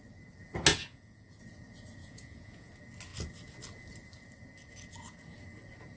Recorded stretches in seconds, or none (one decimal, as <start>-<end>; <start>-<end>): 0.0-0.7; 1.4-2.0; 2.7-6.0